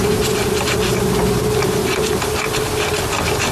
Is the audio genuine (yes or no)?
yes